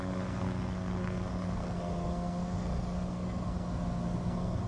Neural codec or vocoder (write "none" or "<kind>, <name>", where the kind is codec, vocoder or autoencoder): codec, SNAC